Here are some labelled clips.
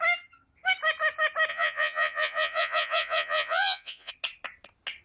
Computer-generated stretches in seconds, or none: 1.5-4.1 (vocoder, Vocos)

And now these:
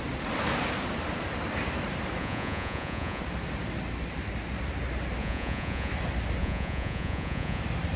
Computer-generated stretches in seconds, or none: 2.2-3.2 (vocoder, Vocos); 5.2-5.9; 6.4-7.6

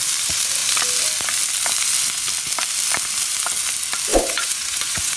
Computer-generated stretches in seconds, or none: 4.1-5.2 (vocoder, Vocos)

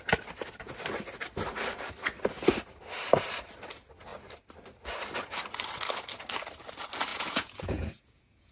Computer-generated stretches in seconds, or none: 7.1-8.5 (vocoder, Vocos)

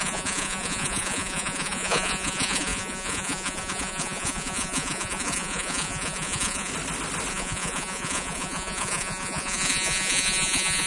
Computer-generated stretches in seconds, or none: 0.0-6.7 (vocoder, Vocos); 7.3-10.9

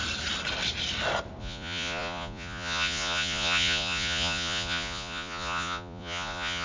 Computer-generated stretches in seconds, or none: 1.4-6.6 (vocoder, Vocos)

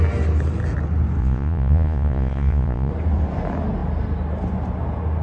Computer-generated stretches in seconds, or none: 1.2-2.9 (vocoder, Vocos)